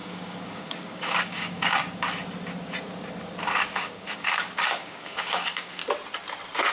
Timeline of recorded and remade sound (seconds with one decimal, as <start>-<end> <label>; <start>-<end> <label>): 0.0-1.8 remade; 1.8-3.4 recorded; 3.4-5.8 remade; 5.8-6.7 recorded